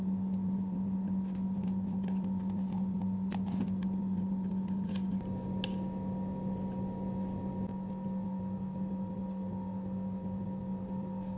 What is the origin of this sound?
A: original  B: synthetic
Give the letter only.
A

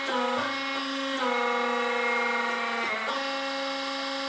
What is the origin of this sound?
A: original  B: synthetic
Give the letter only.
A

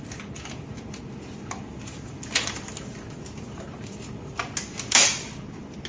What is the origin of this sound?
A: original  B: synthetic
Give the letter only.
A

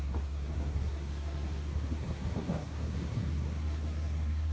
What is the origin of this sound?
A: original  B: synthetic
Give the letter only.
B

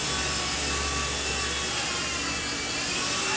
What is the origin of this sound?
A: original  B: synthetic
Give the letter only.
A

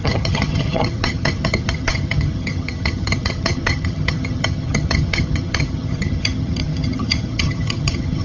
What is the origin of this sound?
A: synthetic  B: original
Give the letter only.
A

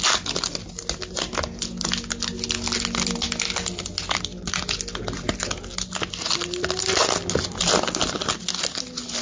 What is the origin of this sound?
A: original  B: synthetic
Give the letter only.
A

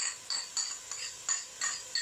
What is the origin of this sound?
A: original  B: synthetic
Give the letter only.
A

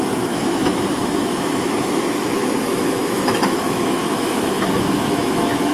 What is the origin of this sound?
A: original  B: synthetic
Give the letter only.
B